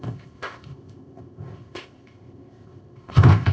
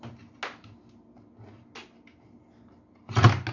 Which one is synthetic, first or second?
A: first